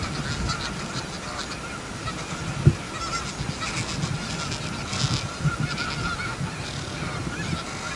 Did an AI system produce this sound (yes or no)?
no